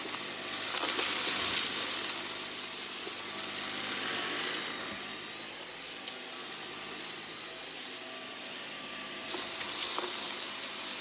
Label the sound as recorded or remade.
recorded